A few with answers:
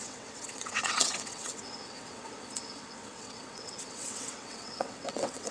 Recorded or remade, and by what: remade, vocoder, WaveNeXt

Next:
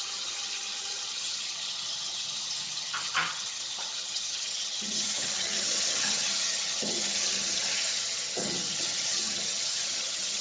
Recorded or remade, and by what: remade, vocoder, HiFi-GAN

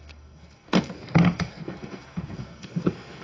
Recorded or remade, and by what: remade, codec, SNAC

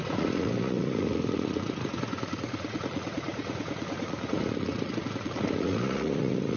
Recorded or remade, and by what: remade, vocoder, Vocos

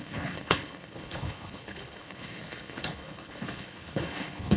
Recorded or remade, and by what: remade, codec, HILCodec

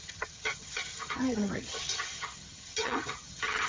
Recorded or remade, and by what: remade, vocoder, HiFi-GAN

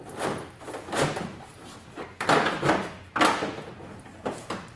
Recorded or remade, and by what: recorded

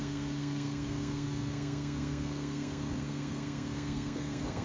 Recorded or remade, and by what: remade, codec, SNAC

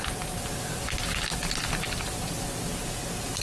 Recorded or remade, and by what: recorded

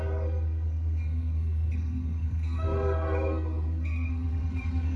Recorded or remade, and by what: remade, codec, SNAC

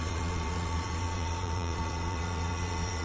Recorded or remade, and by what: remade, vocoder, Vocos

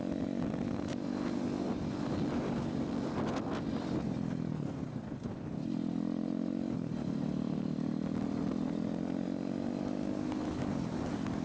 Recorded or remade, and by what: recorded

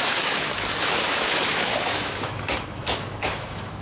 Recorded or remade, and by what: remade, autoencoder, DAC-VAE